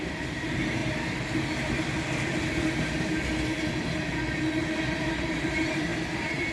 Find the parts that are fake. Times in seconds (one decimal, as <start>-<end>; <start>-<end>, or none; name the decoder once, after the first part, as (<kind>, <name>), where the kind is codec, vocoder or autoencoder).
0.0-0.8 (vocoder, BigVGAN v2); 4.3-6.5